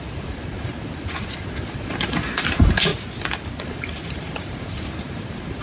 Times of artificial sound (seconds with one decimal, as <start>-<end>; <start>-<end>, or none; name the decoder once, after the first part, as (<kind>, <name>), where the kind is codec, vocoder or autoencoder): 0.0-2.9 (vocoder, BigVGAN v2); 3.6-5.6